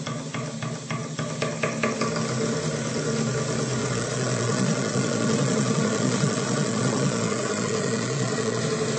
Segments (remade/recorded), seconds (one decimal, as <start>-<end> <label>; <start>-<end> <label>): 0.0-3.8 recorded; 3.8-8.6 remade; 8.6-9.0 recorded